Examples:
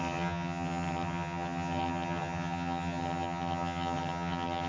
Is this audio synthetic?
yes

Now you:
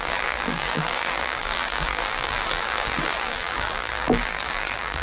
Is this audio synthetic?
yes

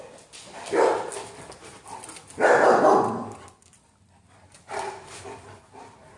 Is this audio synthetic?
no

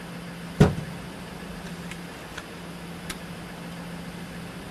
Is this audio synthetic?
no